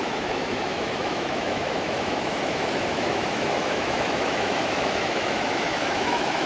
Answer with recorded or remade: remade